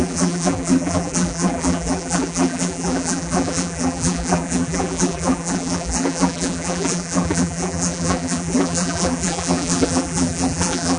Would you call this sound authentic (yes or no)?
no